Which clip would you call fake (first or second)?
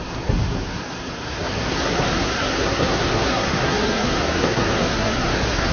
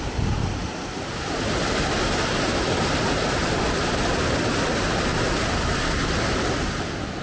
first